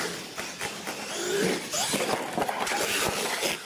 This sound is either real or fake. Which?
real